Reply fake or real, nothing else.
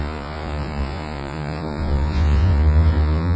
fake